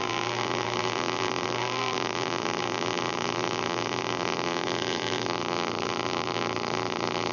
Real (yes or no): no